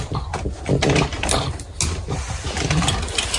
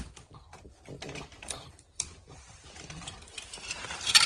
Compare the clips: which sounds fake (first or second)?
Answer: second